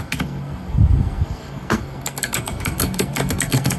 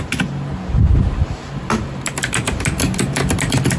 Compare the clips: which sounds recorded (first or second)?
second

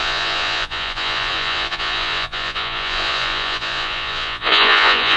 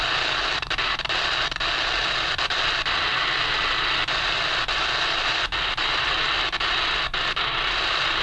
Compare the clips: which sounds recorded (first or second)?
second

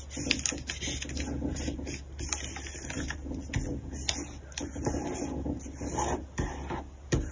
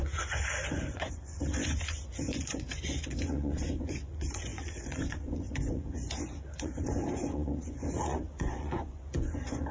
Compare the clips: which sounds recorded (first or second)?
first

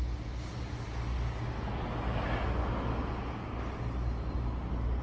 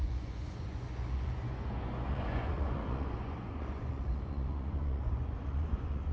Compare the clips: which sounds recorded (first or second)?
first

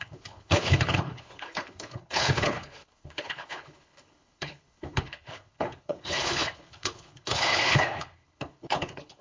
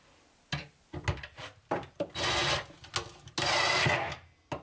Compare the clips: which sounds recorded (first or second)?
second